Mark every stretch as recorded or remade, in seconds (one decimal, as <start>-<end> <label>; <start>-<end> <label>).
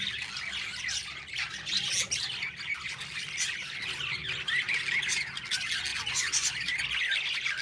0.0-5.9 recorded; 5.9-6.5 remade; 6.5-7.6 recorded